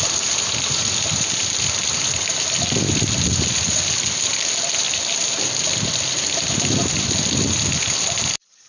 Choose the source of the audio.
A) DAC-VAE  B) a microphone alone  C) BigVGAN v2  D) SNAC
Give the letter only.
C